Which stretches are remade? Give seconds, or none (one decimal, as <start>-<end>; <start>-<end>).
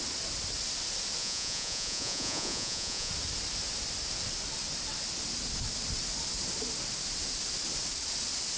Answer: 1.2-3.1